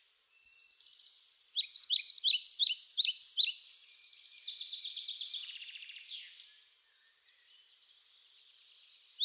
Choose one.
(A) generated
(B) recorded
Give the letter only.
A